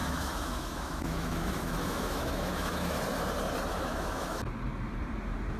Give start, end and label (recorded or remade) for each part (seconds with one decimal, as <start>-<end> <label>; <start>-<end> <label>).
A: 0.0-3.0 remade; 3.0-3.7 recorded; 3.7-4.4 remade; 4.4-5.6 recorded